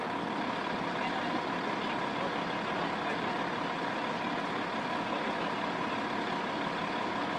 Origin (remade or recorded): recorded